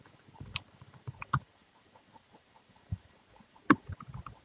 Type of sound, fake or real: fake